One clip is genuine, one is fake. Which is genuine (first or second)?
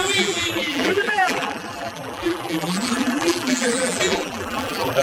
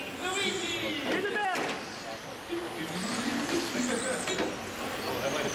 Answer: second